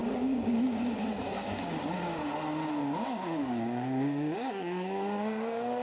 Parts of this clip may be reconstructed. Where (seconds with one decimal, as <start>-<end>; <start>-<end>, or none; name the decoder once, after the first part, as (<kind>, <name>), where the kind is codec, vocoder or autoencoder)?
0.0-2.2 (codec, DAC); 2.8-5.8

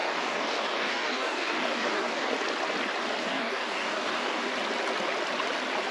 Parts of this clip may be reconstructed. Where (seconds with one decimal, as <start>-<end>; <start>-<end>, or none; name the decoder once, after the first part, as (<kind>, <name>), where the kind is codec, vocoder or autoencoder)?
0.0-2.3 (codec, DAC); 3.2-4.5

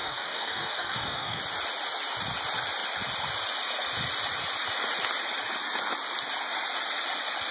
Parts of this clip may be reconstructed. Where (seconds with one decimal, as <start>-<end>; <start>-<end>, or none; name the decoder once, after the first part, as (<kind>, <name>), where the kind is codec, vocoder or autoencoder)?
0.0-1.4 (codec, DAC)

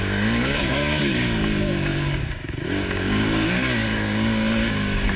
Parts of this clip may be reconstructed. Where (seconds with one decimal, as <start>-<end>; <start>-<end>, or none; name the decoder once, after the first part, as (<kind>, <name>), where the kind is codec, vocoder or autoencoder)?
0.0-5.2 (codec, DAC)

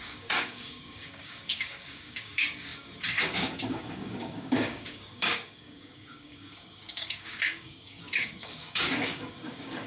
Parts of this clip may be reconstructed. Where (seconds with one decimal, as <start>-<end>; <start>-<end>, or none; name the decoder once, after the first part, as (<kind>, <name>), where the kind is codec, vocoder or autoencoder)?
0.0-9.9 (codec, DAC)

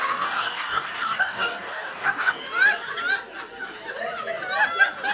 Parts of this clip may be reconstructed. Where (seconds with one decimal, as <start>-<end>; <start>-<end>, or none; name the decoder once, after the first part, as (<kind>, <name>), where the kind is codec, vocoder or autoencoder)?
0.0-2.4 (codec, DAC)

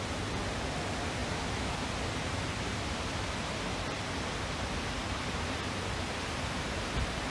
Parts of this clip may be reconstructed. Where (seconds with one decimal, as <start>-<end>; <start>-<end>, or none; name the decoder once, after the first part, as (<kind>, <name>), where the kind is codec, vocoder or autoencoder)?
none

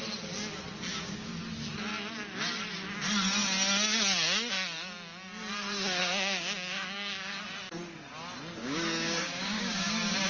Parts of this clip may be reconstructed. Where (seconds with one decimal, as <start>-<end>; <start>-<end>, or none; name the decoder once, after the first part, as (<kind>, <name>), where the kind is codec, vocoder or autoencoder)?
0.9-1.4 (codec, DAC); 6.0-7.4; 8.6-9.9